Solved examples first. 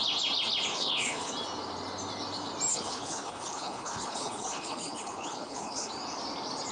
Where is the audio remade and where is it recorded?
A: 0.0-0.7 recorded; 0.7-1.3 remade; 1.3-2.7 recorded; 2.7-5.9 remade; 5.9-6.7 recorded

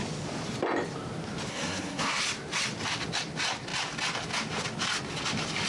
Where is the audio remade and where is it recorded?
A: 0.0-1.5 recorded; 1.5-2.2 remade; 2.2-5.7 recorded

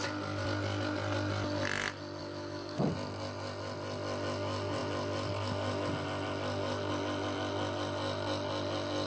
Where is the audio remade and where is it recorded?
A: 0.0-2.2 recorded; 2.2-2.9 remade; 2.9-9.1 recorded

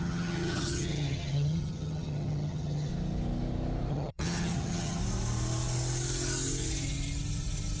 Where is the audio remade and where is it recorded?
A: 0.0-2.9 remade; 2.9-3.9 recorded; 3.9-5.0 remade; 5.0-7.8 recorded

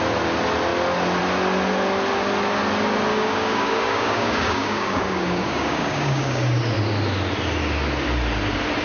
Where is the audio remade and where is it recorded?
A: 0.0-3.1 recorded; 3.1-6.6 remade; 6.6-8.8 recorded